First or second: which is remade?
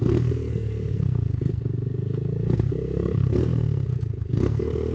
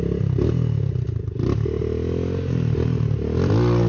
first